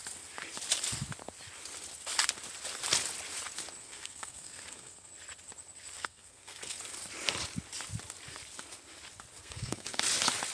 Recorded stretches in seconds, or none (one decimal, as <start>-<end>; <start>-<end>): 0.0-3.8; 5.1-6.0; 6.8-9.4; 10.0-10.5